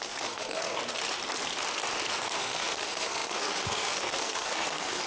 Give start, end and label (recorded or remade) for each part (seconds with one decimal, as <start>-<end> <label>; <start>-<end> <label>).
0.0-0.8 remade; 0.8-2.1 recorded; 2.1-5.1 remade